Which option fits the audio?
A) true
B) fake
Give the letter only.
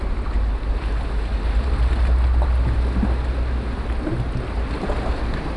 A